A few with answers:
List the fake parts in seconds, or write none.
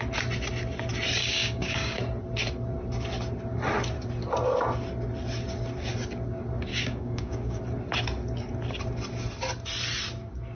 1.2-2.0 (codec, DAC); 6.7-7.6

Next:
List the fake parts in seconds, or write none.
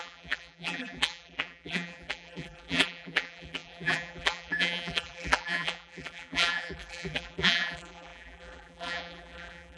0.0-9.8 (vocoder, BigVGAN v2)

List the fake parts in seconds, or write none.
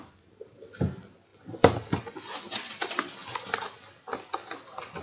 0.0-1.3 (vocoder, BigVGAN v2); 2.4-3.2